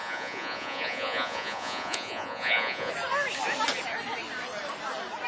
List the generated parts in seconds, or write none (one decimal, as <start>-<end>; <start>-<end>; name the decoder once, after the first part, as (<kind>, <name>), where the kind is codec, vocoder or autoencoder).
0.0-2.9 (vocoder, Vocos)